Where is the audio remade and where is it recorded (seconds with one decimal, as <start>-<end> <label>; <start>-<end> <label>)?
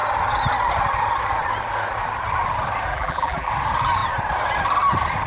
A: 0.0-2.9 recorded; 2.9-3.5 remade; 3.5-5.3 recorded